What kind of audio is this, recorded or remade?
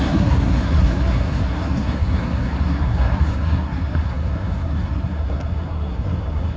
remade